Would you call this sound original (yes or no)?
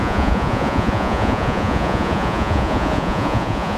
no